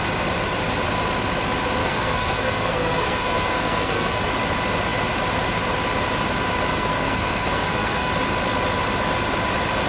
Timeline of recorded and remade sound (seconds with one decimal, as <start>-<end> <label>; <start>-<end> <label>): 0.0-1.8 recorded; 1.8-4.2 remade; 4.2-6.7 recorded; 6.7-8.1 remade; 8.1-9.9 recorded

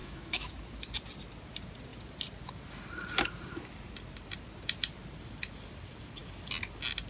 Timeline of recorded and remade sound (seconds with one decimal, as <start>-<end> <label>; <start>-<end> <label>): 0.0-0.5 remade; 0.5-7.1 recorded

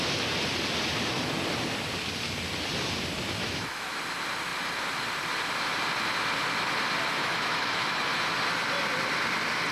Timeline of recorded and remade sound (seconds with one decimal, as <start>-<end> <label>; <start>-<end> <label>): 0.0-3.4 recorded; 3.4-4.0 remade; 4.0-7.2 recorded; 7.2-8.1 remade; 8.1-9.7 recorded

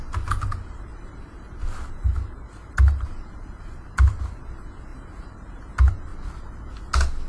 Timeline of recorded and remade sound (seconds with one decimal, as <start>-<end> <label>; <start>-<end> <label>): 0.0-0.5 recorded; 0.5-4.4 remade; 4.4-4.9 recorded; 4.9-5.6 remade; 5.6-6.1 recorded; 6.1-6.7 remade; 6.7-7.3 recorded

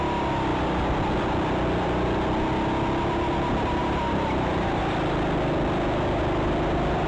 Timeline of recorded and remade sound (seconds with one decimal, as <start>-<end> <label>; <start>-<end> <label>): 0.0-3.8 recorded; 3.8-4.8 remade; 4.8-7.1 recorded

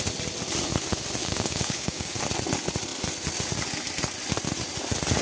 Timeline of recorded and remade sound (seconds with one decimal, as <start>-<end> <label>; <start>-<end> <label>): 0.0-1.2 recorded; 1.2-2.2 remade; 2.2-5.2 recorded